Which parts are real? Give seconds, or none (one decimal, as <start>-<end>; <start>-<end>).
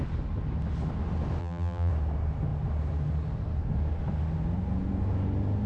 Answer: 0.0-1.4; 1.9-5.7